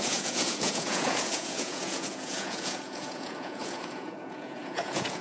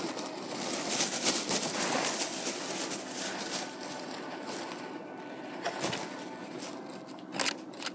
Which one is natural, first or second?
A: second